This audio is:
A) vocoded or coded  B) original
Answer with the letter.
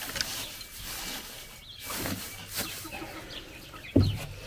B